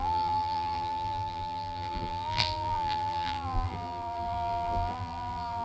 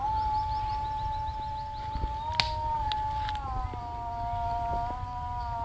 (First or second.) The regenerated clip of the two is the first